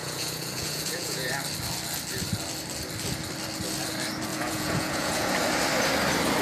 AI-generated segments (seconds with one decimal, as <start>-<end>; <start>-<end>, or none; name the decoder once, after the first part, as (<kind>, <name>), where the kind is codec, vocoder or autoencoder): 0.0-1.3 (vocoder, Vocos); 4.3-5.3